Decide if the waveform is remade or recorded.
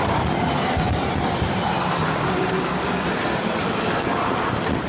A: remade